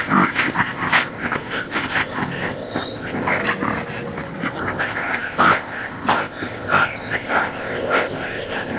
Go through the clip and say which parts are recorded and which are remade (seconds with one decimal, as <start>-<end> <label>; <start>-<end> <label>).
0.0-3.4 remade; 3.4-4.6 recorded; 4.6-8.8 remade